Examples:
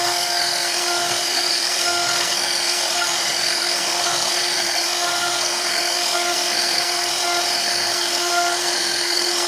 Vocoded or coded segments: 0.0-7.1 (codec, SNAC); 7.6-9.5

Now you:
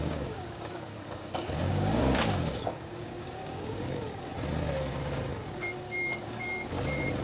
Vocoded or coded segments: 0.0-4.3 (codec, DAC); 5.3-6.7

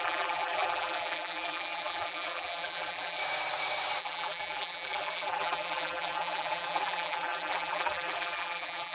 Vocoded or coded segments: 0.0-3.2 (vocoder, BigVGAN v2); 4.0-8.9

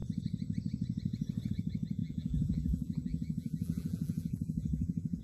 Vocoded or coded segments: 2.0-5.2 (vocoder, BigVGAN v2)

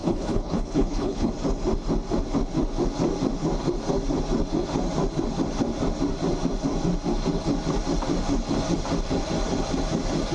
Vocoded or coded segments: 0.0-1.3 (codec, HILCodec)